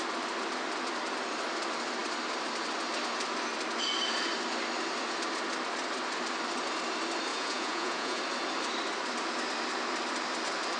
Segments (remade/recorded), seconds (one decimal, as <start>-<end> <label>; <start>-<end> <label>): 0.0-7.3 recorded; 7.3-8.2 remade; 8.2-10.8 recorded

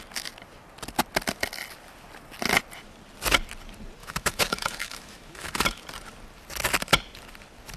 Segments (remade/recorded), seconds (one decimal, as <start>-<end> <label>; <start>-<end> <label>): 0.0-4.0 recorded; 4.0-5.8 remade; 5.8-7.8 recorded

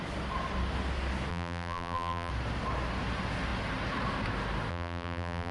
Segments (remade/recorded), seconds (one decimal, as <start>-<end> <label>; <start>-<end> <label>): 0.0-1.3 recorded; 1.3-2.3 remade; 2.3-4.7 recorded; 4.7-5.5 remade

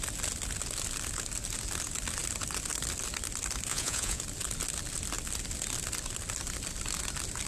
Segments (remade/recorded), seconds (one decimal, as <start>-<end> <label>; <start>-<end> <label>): 0.0-3.7 recorded; 3.7-4.2 remade; 4.2-7.5 recorded

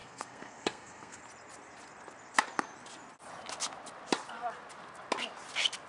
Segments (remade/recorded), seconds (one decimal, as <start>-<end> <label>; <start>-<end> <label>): 0.0-1.2 remade; 1.2-5.9 recorded

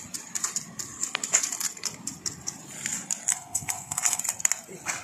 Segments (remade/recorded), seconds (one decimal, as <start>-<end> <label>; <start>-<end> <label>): 0.0-3.3 recorded; 3.3-4.2 remade; 4.2-5.0 recorded

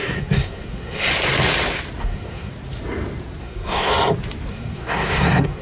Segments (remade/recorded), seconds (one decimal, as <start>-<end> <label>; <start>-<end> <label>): 0.0-1.1 remade; 1.1-2.0 recorded; 2.0-2.5 remade; 2.5-3.4 recorded; 3.4-3.9 remade; 3.9-4.5 recorded; 4.5-5.6 remade

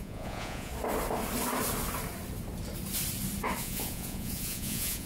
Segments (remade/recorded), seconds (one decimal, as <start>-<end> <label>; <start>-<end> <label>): 0.0-0.7 remade; 0.7-3.6 recorded; 3.6-5.0 remade